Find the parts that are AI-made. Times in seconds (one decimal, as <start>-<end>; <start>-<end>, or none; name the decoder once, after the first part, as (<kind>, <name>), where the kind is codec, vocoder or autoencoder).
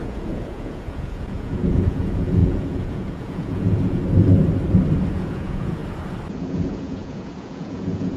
0.0-4.0 (vocoder, Vocos); 5.1-5.8; 6.4-8.2